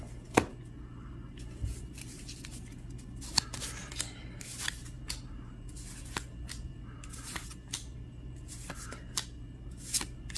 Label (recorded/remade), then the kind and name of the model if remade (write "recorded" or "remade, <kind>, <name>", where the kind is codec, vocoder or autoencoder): recorded